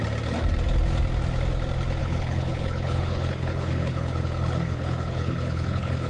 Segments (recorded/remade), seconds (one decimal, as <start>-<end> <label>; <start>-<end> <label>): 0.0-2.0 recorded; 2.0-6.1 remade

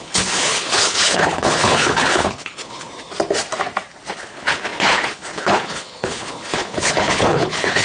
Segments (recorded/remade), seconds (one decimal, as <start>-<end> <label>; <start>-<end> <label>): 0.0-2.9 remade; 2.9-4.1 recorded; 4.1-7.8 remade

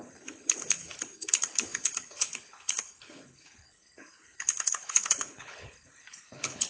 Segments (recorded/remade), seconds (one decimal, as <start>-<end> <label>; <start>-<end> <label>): 0.0-6.7 remade